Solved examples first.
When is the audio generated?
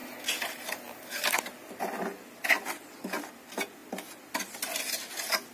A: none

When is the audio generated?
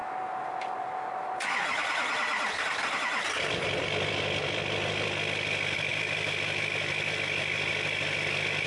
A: none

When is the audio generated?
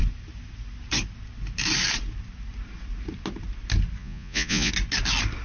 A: 4.0-4.7 (vocoder, Vocos)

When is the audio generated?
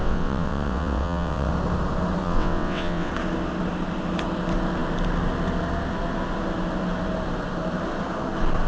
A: 0.0-1.5 (vocoder, WaveNeXt); 2.2-3.1